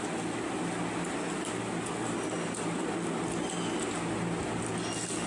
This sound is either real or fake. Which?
real